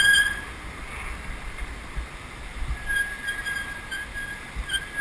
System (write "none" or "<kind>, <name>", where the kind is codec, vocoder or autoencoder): none